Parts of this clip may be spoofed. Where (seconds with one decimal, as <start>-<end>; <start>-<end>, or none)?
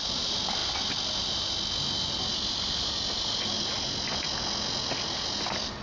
none